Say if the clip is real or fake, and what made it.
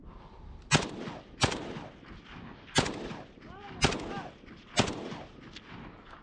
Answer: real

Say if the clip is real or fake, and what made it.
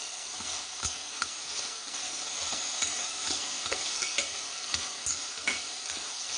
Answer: fake, codec, SNAC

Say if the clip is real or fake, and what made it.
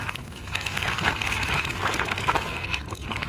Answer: fake, codec, SNAC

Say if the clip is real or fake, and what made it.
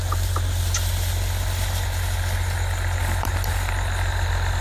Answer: real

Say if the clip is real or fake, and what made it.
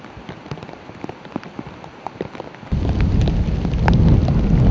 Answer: real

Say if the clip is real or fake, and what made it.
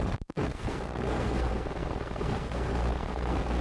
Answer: fake, codec, SNAC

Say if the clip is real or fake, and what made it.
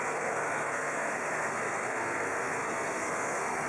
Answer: fake, codec, SNAC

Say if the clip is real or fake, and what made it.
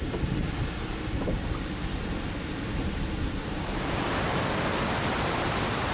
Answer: real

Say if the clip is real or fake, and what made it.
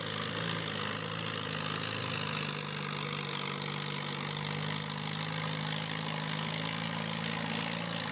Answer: real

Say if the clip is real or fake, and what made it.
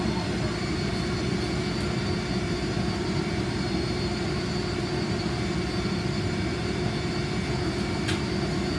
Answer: real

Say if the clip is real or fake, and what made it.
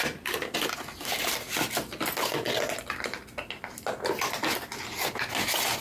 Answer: real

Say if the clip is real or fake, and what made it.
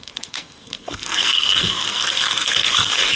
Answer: fake, codec, SNAC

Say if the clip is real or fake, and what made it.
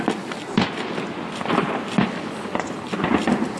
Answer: real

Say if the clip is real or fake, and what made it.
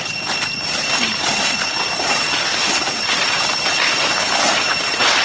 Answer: real